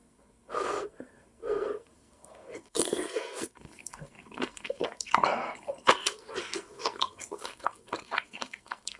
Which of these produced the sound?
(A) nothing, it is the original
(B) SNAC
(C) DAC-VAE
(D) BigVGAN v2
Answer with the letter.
B